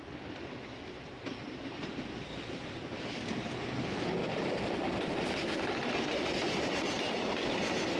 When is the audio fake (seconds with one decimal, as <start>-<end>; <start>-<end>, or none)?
1.4-2.2; 4.2-4.8